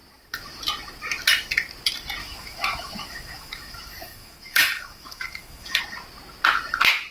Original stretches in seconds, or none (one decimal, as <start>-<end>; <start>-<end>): 0.0-2.2; 5.8-7.1